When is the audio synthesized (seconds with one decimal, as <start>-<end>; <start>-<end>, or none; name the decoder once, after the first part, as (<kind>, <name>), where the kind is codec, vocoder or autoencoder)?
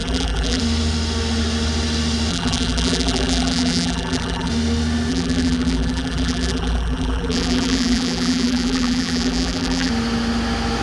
0.0-0.6 (vocoder, BigVGAN v2); 2.3-4.5; 5.1-9.9